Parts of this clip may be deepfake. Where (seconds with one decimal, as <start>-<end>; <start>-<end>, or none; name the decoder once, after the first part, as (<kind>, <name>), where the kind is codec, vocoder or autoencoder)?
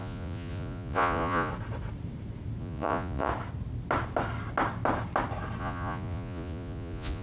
0.0-1.5 (vocoder, Vocos); 2.6-3.3; 5.6-7.2